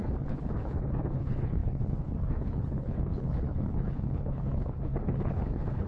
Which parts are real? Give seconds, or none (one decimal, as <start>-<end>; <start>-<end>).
none